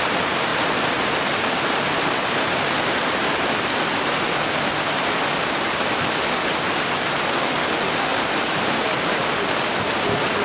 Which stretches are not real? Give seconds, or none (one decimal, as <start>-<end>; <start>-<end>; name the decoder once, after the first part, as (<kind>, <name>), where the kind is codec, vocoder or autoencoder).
0.5-1.1 (vocoder, BigVGAN v2); 8.1-9.3